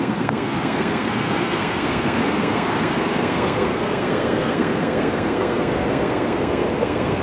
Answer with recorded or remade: remade